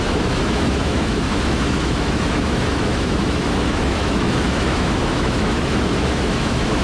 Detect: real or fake fake